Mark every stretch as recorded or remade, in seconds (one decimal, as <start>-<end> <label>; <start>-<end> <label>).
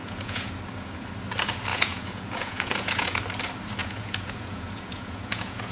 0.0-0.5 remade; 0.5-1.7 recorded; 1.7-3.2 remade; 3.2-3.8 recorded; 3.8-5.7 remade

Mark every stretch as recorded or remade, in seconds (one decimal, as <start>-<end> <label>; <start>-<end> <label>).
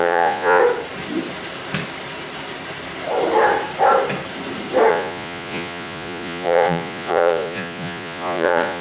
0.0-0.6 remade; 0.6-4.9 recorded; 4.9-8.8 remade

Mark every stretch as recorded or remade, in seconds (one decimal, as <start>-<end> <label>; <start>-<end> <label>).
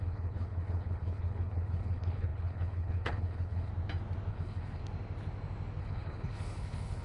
0.0-3.7 remade; 3.7-4.3 recorded; 4.3-4.8 remade; 4.8-5.8 recorded; 5.8-7.0 remade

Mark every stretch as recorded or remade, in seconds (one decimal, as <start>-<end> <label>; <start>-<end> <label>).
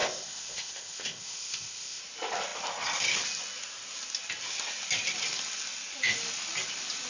0.0-2.0 remade; 2.0-7.1 recorded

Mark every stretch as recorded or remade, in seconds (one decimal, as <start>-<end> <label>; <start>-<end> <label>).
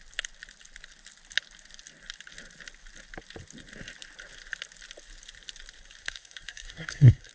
0.0-6.0 recorded; 6.0-7.3 remade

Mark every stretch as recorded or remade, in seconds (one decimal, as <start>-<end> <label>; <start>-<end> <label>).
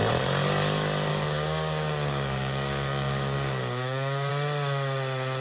0.0-1.1 recorded; 1.1-4.3 remade; 4.3-5.4 recorded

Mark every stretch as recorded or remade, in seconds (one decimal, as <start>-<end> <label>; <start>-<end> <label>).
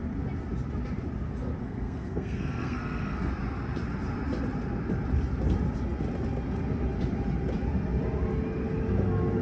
0.0-1.6 recorded; 1.6-3.3 remade; 3.3-9.4 recorded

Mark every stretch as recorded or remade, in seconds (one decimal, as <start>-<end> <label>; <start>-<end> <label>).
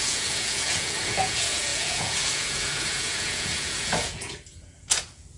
0.0-5.4 remade